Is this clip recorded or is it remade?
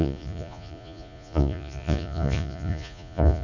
remade